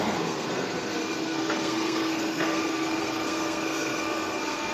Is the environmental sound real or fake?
fake